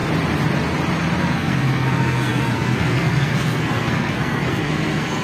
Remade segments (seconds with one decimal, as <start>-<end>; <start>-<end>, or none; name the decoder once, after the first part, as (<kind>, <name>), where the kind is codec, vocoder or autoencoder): 1.2-5.2 (codec, SNAC)

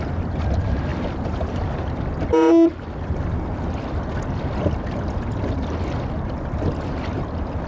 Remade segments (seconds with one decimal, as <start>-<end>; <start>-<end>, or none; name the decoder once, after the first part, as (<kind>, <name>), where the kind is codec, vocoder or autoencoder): none

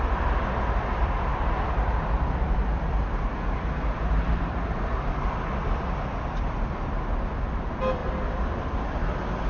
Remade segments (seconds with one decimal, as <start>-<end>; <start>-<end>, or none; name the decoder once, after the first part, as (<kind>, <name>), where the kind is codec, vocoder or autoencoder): 0.0-9.5 (vocoder, BigVGAN v2)

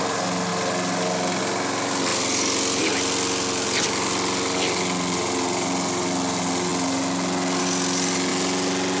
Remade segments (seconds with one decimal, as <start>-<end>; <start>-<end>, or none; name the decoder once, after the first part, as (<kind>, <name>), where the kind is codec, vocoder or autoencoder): none

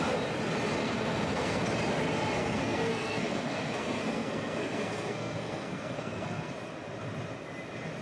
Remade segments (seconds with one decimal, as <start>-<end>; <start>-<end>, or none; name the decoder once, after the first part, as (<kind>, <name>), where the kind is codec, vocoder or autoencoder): 0.8-1.6 (codec, SNAC); 2.4-6.5

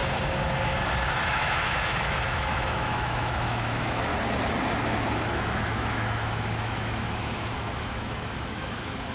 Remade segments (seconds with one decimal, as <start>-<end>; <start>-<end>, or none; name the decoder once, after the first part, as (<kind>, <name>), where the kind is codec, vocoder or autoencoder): 1.3-4.1 (autoencoder, DAC-VAE); 4.7-9.1

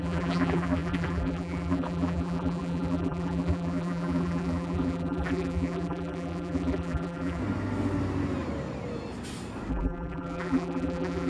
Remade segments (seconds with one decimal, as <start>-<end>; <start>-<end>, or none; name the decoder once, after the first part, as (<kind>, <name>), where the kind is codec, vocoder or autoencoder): 0.0-7.4 (vocoder, BigVGAN v2); 9.7-11.3

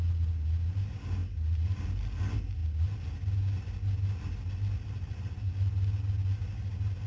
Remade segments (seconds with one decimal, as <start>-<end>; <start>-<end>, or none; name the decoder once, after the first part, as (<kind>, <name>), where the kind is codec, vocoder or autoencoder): 1.2-2.2 (vocoder, BigVGAN v2)